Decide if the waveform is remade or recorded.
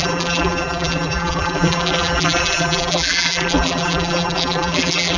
remade